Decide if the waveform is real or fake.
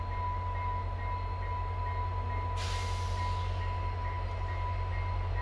real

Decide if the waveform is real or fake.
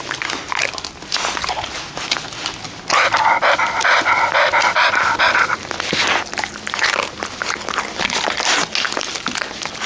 real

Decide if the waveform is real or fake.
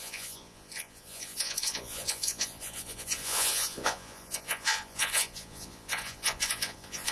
fake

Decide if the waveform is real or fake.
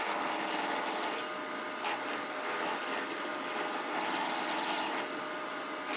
real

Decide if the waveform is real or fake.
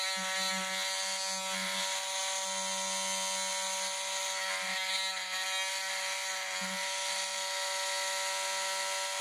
real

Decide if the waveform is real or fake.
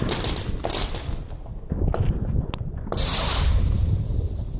real